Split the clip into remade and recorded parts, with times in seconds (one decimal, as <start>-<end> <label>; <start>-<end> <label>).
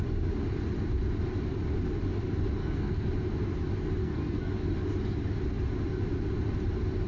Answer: 0.0-2.6 recorded; 2.6-3.1 remade; 3.1-4.0 recorded; 4.0-4.5 remade; 4.5-7.1 recorded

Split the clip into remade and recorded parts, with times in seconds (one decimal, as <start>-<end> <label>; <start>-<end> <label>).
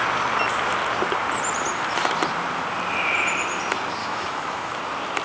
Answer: 0.0-4.0 recorded; 4.0-4.8 remade; 4.8-5.2 recorded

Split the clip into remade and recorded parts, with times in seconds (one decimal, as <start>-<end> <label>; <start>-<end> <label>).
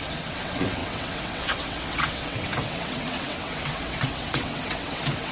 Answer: 0.0-5.3 remade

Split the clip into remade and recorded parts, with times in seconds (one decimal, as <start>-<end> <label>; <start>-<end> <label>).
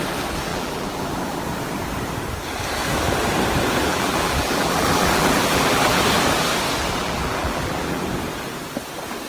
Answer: 0.0-0.5 recorded; 0.5-1.4 remade; 1.4-3.8 recorded; 3.8-6.0 remade; 6.0-7.0 recorded; 7.0-8.0 remade; 8.0-9.3 recorded